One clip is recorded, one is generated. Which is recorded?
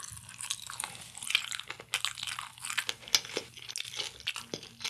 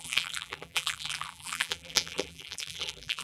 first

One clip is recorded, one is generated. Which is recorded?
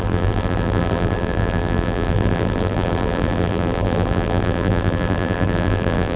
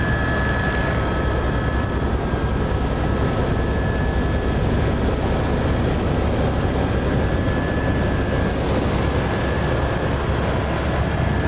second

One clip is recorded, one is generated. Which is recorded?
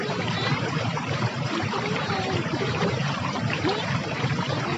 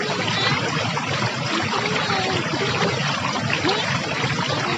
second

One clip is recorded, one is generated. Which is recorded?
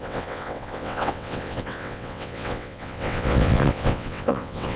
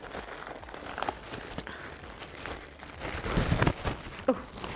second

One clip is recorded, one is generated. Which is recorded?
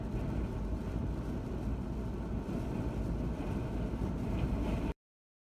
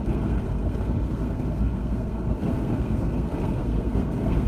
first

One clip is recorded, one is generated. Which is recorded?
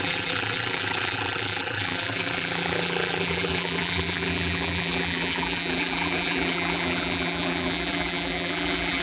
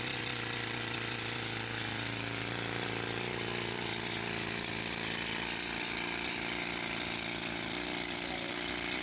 second